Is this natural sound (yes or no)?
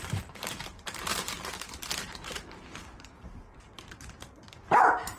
no